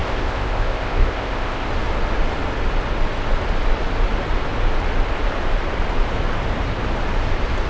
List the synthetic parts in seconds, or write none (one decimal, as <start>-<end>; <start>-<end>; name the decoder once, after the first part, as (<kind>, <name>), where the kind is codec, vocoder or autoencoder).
0.0-1.7 (codec, ZipCodec)